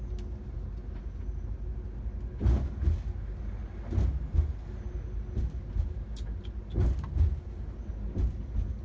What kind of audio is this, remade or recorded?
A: recorded